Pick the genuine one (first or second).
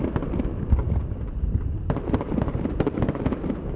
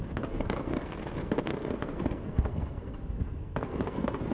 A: first